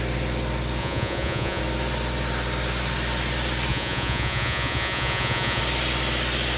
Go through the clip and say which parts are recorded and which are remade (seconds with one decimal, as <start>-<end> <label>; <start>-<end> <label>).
0.0-0.8 recorded; 0.8-1.6 remade; 1.6-3.7 recorded; 3.7-5.6 remade; 5.6-6.6 recorded

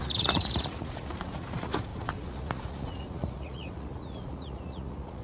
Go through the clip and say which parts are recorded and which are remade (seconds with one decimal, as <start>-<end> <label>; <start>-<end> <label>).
0.0-5.2 remade